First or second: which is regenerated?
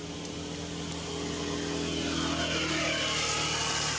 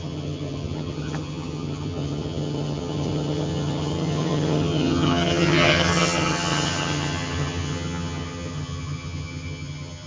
second